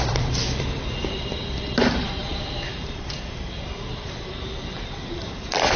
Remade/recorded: remade